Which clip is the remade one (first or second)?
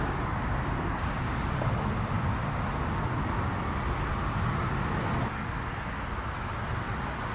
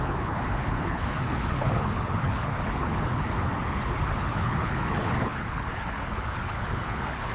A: second